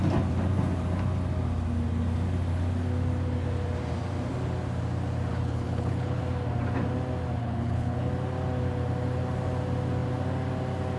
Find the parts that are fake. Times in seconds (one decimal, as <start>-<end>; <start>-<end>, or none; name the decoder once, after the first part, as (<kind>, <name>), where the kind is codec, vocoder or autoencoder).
5.3-6.2 (codec, HILCodec); 7.4-8.1